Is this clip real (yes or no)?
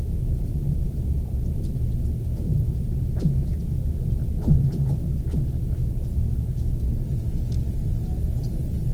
yes